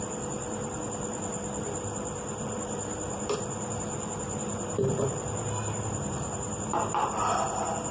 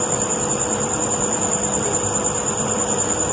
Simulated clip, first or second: first